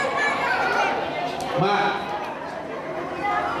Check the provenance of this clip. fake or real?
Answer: real